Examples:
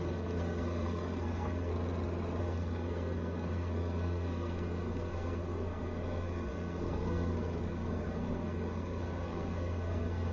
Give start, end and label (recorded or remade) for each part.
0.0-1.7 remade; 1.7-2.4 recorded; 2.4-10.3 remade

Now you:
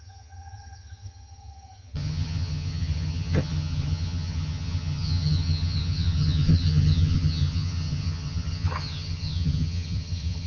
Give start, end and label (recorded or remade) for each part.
0.0-10.5 remade

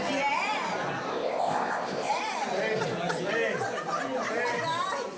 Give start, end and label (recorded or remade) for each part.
0.0-1.1 recorded; 1.1-2.1 remade; 2.1-5.2 recorded

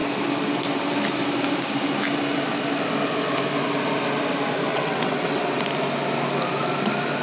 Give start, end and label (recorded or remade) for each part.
0.0-4.7 recorded; 4.7-5.6 remade; 5.6-7.2 recorded

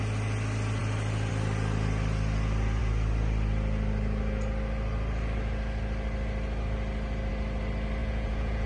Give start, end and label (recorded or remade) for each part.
0.0-8.0 recorded; 8.0-8.7 remade

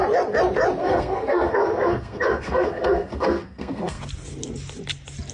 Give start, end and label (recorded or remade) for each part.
0.0-0.8 recorded; 0.8-4.0 remade; 4.0-5.3 recorded